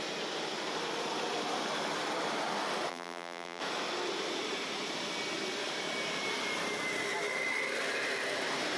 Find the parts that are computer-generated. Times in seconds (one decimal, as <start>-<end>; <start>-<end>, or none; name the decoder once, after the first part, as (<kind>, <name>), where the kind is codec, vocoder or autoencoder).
2.9-3.6 (vocoder, BigVGAN v2)